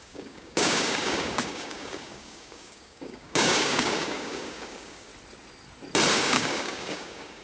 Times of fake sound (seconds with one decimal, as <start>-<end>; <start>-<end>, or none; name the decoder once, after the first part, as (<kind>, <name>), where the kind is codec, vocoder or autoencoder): 0.0-5.1 (codec, DAC); 6.1-7.4